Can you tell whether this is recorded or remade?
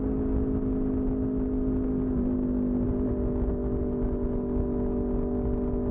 recorded